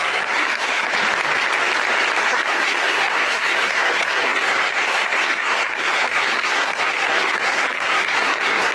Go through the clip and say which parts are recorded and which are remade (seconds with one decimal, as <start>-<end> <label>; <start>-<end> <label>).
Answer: 0.0-0.9 remade; 0.9-2.2 recorded; 2.2-8.7 remade

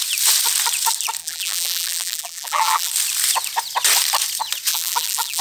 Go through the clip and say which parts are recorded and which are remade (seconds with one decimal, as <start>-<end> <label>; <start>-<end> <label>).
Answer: 0.0-1.2 recorded; 1.2-2.9 remade; 2.9-4.7 recorded; 4.7-5.4 remade

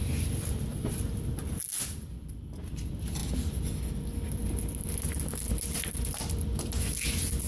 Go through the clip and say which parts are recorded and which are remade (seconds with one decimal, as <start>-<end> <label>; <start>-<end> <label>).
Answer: 0.0-7.5 recorded

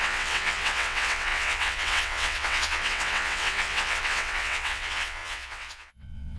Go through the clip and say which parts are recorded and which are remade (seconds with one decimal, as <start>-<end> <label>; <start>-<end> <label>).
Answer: 0.0-6.4 remade